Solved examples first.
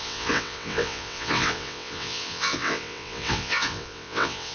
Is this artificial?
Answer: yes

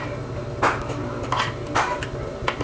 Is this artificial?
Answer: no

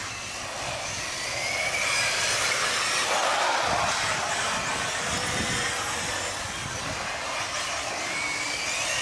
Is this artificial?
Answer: no